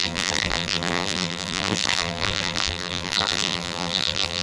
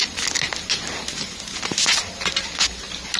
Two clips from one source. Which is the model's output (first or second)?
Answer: first